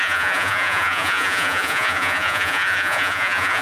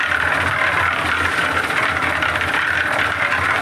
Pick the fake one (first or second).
first